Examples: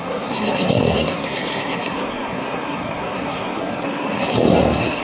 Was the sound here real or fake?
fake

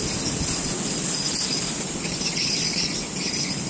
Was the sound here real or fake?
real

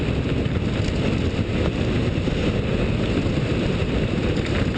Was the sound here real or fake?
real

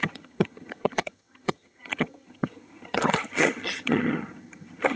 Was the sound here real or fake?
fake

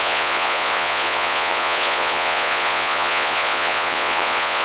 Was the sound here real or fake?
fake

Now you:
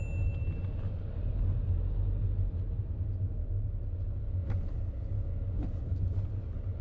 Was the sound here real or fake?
real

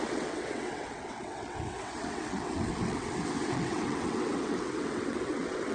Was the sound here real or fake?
fake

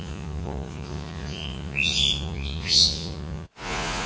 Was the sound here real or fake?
fake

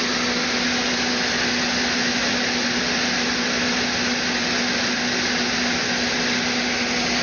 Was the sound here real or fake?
real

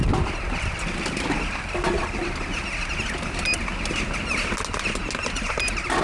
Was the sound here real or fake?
real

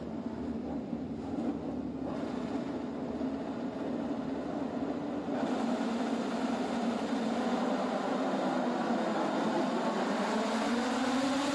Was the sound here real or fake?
real